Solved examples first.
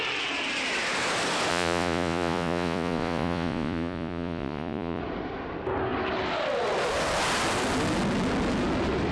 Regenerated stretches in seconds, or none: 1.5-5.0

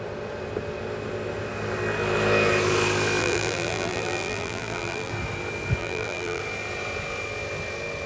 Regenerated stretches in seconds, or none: 3.2-5.1; 5.8-6.4